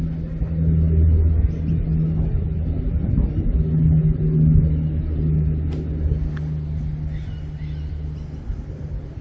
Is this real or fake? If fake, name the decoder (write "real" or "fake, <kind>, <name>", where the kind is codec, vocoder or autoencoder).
real